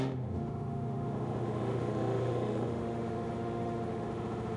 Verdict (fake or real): fake